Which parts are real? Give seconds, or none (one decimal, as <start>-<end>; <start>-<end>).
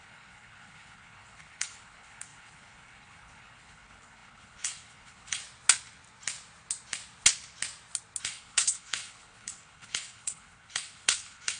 5.4-8.2